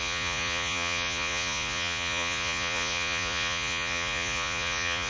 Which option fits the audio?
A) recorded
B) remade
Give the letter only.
B